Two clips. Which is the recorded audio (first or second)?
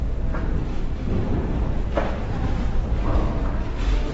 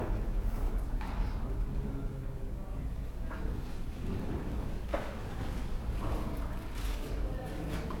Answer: first